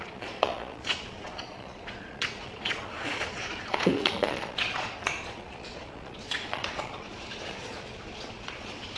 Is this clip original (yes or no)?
no